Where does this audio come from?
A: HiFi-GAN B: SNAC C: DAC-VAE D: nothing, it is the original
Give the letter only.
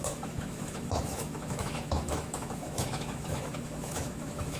C